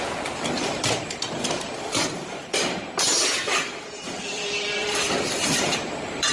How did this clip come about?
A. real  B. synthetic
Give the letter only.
B